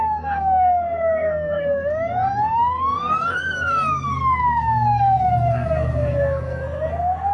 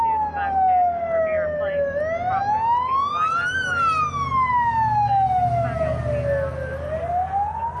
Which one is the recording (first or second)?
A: second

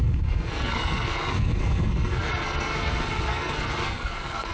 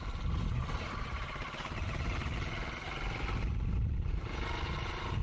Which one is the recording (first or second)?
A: second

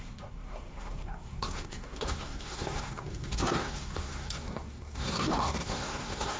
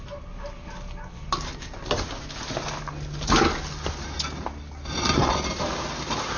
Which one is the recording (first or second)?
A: second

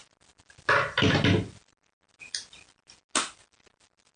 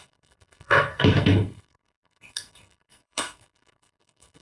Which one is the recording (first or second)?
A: first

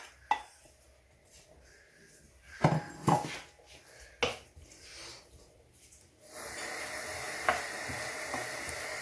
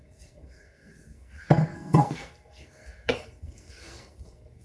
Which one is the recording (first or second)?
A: first